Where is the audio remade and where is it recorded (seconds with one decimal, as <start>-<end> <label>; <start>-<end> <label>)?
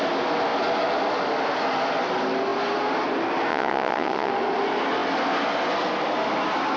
0.0-3.5 recorded; 3.5-4.3 remade; 4.3-6.8 recorded